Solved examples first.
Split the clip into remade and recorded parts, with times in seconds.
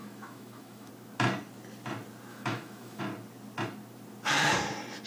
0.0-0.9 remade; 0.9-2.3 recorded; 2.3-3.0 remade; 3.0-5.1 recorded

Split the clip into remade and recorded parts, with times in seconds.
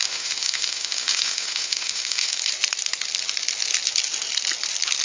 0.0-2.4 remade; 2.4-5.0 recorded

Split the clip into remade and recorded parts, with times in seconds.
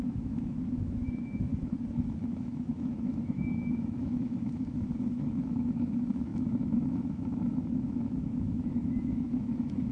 0.0-1.5 remade; 1.5-2.2 recorded; 2.2-9.9 remade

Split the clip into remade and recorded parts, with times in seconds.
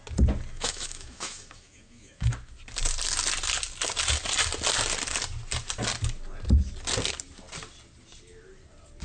0.0-0.5 recorded; 0.5-2.3 remade; 2.3-9.0 recorded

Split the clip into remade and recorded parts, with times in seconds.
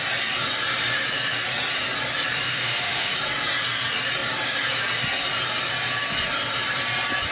0.0-2.5 recorded; 2.5-3.1 remade; 3.1-7.3 recorded